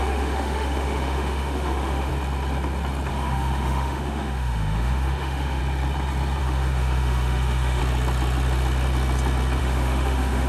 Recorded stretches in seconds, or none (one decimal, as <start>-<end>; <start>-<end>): 2.1-3.1; 5.6-6.4; 7.8-9.6

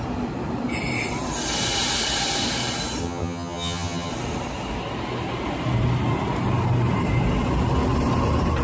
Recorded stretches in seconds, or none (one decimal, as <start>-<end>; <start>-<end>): 0.0-3.0; 4.1-8.6

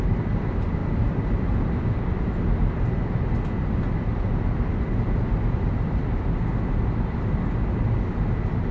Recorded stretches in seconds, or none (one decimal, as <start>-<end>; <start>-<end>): 0.0-8.7